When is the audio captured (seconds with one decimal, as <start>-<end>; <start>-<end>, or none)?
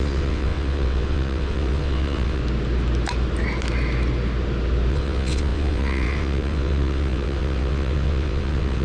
2.4-4.9